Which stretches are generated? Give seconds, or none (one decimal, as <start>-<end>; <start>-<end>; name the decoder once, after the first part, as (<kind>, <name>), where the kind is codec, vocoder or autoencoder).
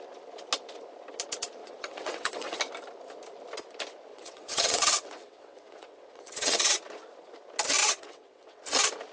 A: 1.6-2.6 (vocoder, WaveNeXt); 4.1-6.8; 7.8-8.6